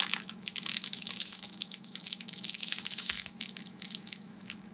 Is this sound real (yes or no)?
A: no